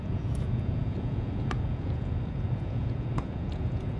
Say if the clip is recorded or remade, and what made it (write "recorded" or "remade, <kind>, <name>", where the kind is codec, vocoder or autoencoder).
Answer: remade, vocoder, Vocos